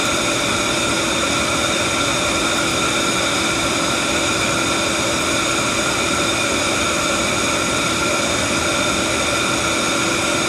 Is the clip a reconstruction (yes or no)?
no